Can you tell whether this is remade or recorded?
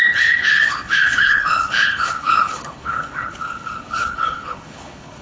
remade